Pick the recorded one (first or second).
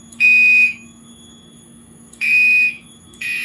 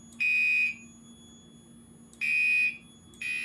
second